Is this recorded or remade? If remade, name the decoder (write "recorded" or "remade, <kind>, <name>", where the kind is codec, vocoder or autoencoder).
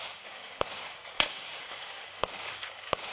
remade, codec, DAC